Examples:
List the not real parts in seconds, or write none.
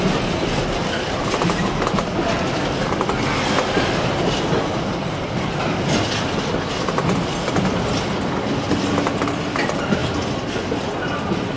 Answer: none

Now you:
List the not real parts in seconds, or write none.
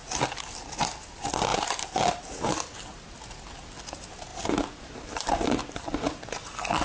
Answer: 1.5-2.2 (vocoder, BigVGAN v2); 4.3-5.9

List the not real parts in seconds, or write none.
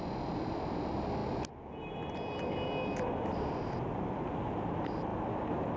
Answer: none